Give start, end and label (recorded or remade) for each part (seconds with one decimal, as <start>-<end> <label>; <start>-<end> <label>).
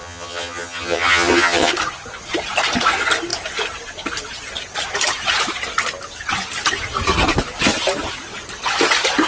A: 0.0-1.7 remade; 1.7-9.3 recorded